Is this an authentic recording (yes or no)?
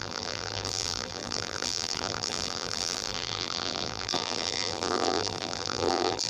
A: no